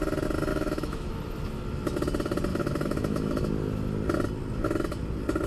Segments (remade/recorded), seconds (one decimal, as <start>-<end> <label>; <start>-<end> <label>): 0.0-0.5 recorded; 0.5-1.1 remade; 1.1-2.5 recorded; 2.5-3.5 remade; 3.5-5.5 recorded

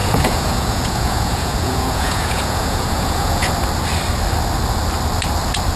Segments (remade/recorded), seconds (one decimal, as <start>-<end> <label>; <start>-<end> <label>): 0.0-3.5 remade; 3.5-5.8 recorded